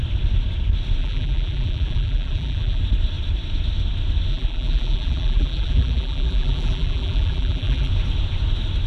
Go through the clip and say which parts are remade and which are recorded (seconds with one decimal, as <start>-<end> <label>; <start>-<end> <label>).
0.0-1.0 recorded; 1.0-2.8 remade; 2.8-4.3 recorded; 4.3-7.9 remade; 7.9-8.9 recorded